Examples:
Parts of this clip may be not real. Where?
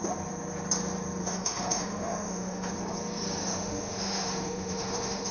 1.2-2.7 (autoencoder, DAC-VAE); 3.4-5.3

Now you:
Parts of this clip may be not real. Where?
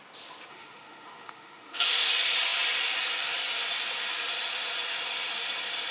0.5-2.1 (autoencoder, DAC-VAE)